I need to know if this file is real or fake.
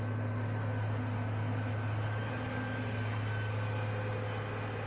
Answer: real